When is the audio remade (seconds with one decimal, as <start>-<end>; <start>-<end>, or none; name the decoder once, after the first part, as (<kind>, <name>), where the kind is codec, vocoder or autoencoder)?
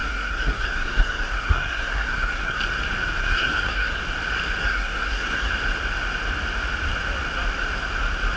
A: 0.0-2.6 (codec, SNAC); 3.2-4.0; 4.6-5.5